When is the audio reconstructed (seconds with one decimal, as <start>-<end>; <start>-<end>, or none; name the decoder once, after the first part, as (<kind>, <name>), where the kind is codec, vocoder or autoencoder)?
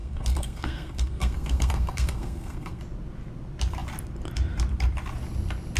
0.0-2.8 (codec, SNAC)